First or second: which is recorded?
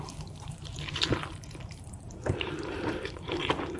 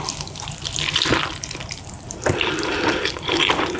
second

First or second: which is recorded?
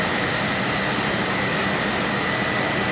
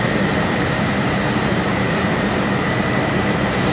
first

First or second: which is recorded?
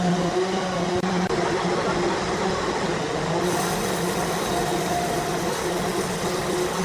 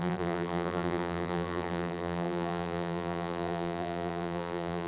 first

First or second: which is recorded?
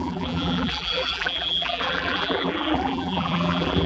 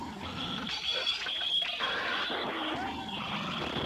second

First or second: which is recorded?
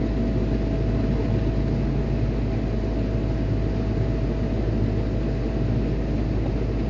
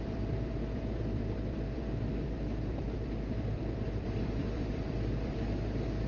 first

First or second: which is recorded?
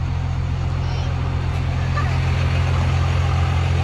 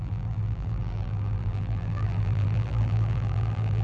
first